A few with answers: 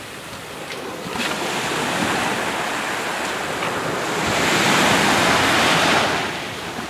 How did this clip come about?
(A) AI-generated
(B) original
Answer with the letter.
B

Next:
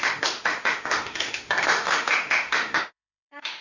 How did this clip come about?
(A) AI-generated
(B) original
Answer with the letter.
A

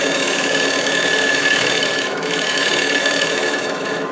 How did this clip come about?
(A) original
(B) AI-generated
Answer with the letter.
B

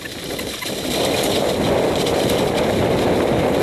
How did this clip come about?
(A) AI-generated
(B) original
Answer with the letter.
B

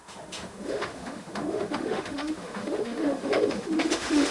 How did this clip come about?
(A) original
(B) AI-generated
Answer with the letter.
B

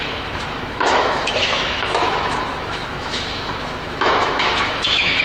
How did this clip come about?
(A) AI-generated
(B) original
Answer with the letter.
A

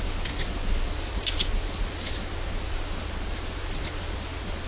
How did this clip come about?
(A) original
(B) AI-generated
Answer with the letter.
A